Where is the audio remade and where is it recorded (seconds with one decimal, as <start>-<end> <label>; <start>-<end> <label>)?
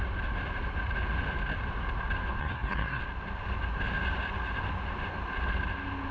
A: 0.0-2.4 recorded; 2.4-3.0 remade; 3.0-6.1 recorded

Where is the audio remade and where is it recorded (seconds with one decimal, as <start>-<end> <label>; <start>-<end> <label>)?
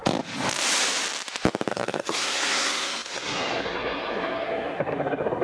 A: 0.0-1.7 recorded; 1.7-5.4 remade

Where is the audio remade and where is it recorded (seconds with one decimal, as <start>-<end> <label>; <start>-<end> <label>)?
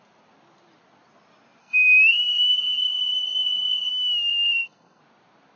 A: 0.0-1.6 recorded; 1.6-3.9 remade; 3.9-4.3 recorded; 4.3-5.0 remade; 5.0-5.6 recorded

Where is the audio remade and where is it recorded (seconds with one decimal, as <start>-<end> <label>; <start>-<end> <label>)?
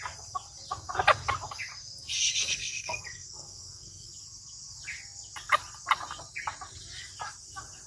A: 0.0-2.6 recorded; 2.6-4.1 remade; 4.1-7.9 recorded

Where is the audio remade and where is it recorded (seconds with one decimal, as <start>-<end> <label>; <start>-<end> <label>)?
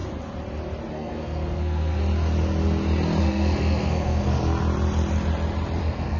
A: 0.0-0.9 recorded; 0.9-2.0 remade; 2.0-3.2 recorded; 3.2-4.4 remade; 4.4-5.8 recorded; 5.8-6.2 remade